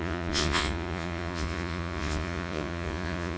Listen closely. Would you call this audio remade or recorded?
remade